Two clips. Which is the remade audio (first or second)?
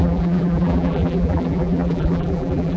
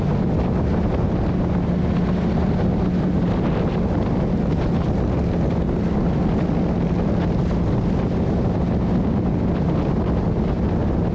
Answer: first